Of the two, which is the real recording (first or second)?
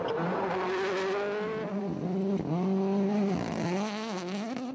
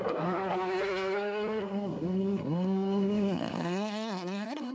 first